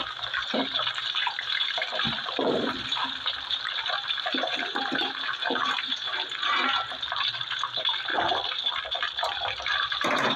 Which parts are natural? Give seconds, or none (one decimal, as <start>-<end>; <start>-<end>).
8.1-9.8